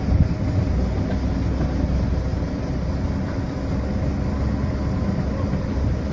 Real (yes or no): yes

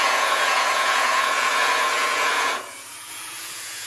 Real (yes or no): no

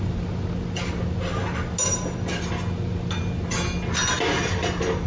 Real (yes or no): yes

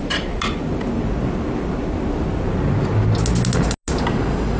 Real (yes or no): yes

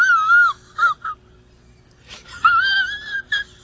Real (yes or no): yes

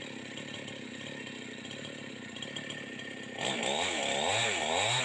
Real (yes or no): yes